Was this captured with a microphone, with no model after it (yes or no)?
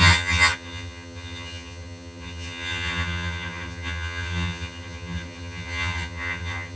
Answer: no